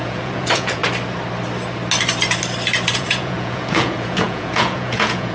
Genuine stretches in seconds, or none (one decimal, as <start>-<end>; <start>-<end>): 0.8-2.9